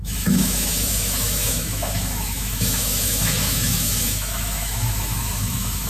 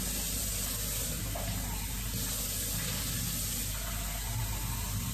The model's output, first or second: first